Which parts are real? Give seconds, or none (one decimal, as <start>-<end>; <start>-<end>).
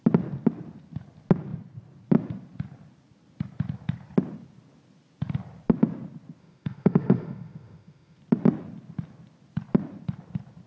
0.0-6.4; 8.2-10.7